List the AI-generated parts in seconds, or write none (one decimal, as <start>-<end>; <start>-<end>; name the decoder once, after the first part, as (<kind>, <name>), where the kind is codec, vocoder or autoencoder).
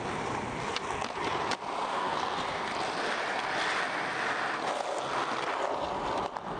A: 1.9-2.6 (codec, SNAC)